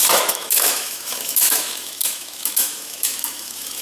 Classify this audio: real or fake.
fake